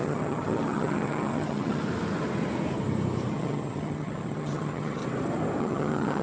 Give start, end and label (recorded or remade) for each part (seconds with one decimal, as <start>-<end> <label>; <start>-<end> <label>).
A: 0.0-1.8 remade; 1.8-3.3 recorded; 3.3-5.0 remade; 5.0-5.6 recorded; 5.6-6.2 remade